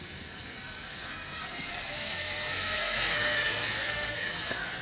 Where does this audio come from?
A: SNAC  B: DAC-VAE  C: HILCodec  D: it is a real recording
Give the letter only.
A